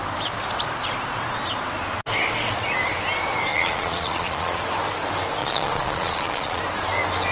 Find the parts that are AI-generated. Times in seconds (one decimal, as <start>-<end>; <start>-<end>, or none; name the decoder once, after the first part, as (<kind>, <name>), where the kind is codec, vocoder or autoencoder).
3.5-4.6 (vocoder, Vocos); 5.4-6.6